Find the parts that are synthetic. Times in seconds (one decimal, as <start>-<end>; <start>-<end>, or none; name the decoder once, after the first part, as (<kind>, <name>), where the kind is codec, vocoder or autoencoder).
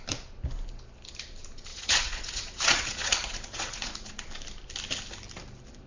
1.7-4.1 (vocoder, Vocos)